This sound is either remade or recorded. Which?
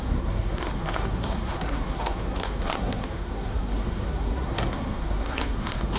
remade